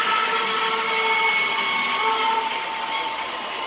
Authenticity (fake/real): real